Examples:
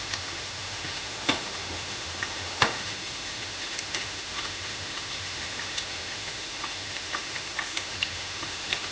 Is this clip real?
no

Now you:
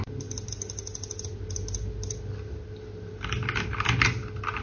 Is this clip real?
yes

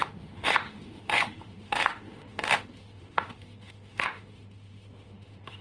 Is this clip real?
no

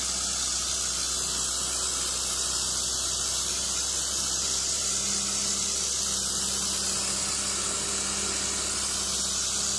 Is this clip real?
yes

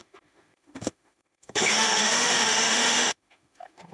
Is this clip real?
no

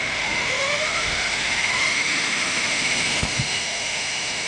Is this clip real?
no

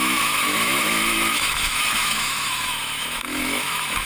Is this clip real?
no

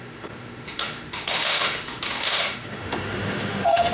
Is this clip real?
no